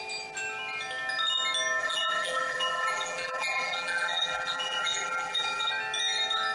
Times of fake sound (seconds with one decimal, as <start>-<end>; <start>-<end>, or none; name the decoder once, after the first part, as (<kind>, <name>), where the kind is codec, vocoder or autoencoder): 1.8-5.7 (vocoder, BigVGAN v2)